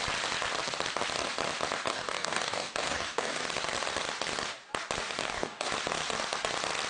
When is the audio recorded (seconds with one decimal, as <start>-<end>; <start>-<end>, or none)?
0.0-1.9; 3.4-5.2; 5.7-6.9

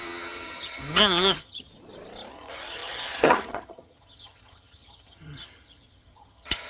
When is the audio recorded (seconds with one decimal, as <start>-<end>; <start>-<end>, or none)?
1.7-2.3

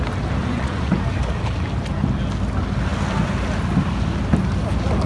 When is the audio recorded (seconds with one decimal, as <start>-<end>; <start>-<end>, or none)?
0.0-0.4; 0.9-5.1